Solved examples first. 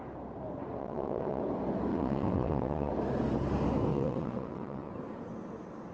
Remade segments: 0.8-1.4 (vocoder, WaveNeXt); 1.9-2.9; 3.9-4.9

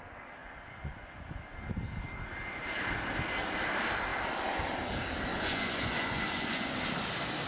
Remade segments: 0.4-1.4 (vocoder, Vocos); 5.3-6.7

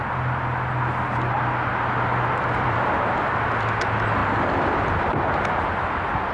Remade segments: 1.7-3.1 (vocoder, BigVGAN v2); 4.2-4.9

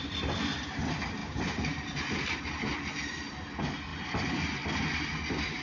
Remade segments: 1.2-2.8 (vocoder, BigVGAN v2); 3.9-4.8

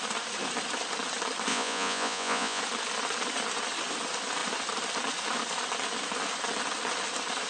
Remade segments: 1.5-2.6 (vocoder, Vocos)

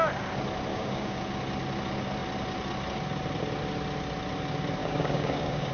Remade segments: 0.7-1.2 (codec, DAC); 4.8-5.7

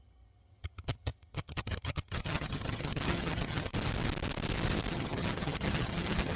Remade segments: 0.0-3.7 (vocoder, HiFi-GAN); 4.9-6.4